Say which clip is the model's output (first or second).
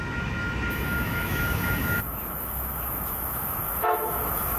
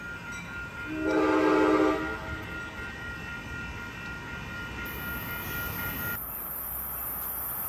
first